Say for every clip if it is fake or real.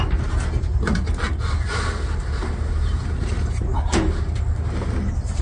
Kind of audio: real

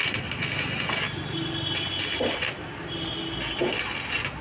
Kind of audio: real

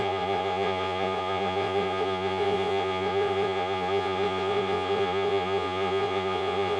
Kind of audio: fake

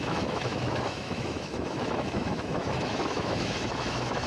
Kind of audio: fake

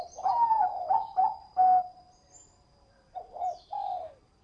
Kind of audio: fake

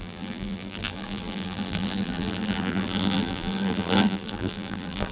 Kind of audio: fake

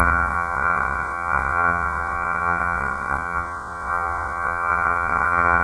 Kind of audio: fake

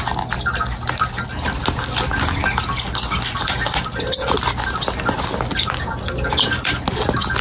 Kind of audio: real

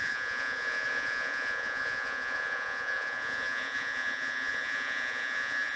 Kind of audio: fake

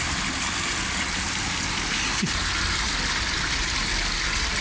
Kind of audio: real